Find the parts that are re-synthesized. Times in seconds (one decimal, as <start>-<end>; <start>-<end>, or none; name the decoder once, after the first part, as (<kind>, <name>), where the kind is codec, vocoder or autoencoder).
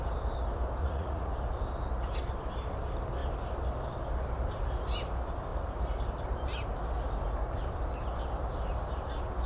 0.8-1.3 (vocoder, Vocos)